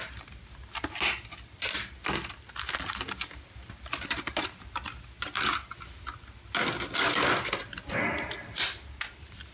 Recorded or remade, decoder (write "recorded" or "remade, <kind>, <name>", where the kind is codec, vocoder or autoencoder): recorded